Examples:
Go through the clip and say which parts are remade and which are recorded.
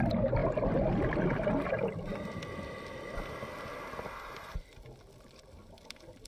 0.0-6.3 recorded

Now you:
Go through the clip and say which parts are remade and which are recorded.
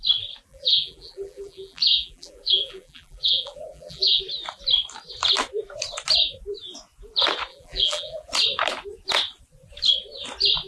0.0-0.5 recorded; 0.5-4.2 remade; 4.2-7.5 recorded; 7.5-8.3 remade; 8.3-10.7 recorded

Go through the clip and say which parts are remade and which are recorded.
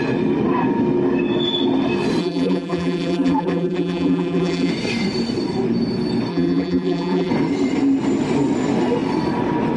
0.0-2.2 recorded; 2.2-4.7 remade; 4.7-6.3 recorded; 6.3-7.3 remade; 7.3-9.8 recorded